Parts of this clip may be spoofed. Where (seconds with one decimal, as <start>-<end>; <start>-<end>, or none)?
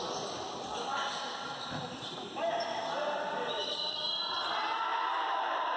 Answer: 0.9-3.8; 4.9-5.8